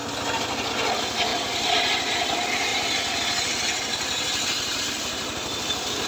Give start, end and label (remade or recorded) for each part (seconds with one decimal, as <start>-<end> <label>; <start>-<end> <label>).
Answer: 0.0-6.1 recorded